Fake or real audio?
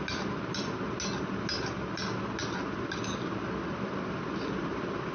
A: real